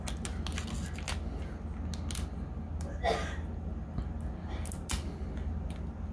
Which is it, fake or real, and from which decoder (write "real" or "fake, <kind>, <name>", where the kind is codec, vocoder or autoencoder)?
real